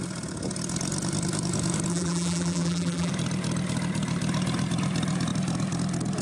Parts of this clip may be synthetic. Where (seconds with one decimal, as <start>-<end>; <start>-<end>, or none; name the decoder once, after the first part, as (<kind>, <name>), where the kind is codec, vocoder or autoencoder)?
1.9-3.1 (vocoder, BigVGAN v2)